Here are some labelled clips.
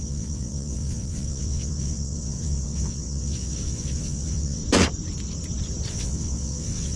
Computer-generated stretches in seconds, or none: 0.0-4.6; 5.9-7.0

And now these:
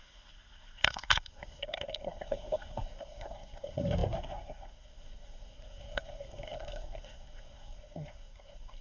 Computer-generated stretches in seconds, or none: 0.0-8.8

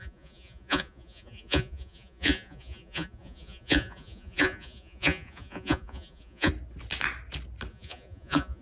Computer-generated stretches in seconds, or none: 0.0-6.5; 7.7-8.6

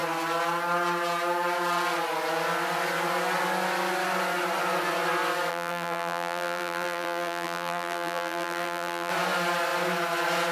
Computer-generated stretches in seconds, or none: 5.5-9.1